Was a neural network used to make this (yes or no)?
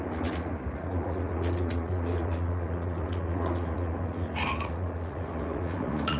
yes